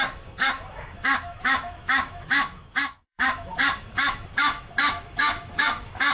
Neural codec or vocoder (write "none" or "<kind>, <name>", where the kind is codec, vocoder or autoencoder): autoencoder, DAC-VAE